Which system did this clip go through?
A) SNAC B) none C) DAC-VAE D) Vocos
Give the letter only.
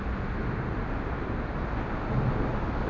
B